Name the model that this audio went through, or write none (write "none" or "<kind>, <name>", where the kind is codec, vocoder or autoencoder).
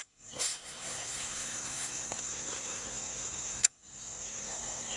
codec, SNAC